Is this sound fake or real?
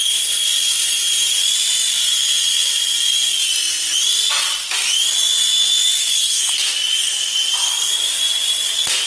real